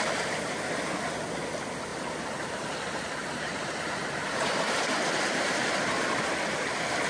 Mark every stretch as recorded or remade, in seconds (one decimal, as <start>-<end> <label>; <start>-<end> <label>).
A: 0.0-1.9 recorded; 1.9-5.0 remade; 5.0-7.1 recorded